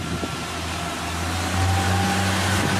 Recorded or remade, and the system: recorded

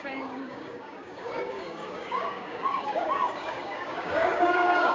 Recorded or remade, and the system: remade, codec, DAC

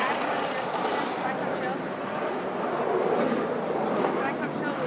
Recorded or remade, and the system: recorded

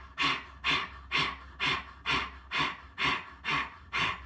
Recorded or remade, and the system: recorded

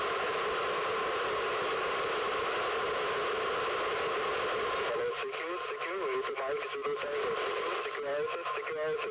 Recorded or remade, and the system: recorded